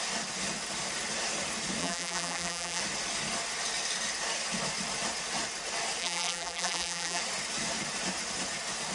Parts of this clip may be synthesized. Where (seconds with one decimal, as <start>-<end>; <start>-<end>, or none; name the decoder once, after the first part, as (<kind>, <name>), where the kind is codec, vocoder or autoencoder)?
1.8-2.8 (vocoder, BigVGAN v2); 6.0-7.2